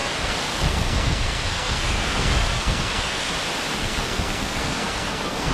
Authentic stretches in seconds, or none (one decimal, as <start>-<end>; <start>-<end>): 3.3-3.8